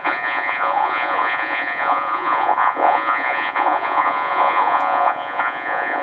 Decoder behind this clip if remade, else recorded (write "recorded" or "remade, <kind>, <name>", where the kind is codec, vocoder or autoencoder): remade, vocoder, Vocos